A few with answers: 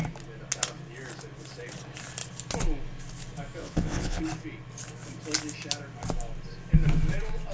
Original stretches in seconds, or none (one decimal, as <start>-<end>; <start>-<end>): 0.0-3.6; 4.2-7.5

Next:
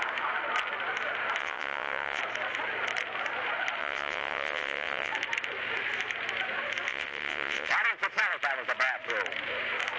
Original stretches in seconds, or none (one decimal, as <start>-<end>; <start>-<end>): 0.0-1.4; 2.2-3.8; 5.1-6.9; 7.7-10.0

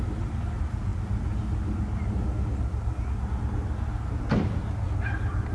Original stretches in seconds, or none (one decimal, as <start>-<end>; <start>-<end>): 0.0-5.5